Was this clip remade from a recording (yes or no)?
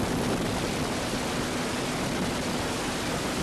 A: no